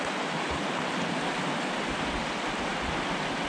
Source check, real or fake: real